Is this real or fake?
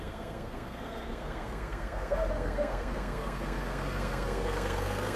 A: fake